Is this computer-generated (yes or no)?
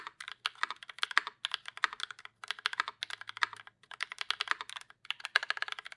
no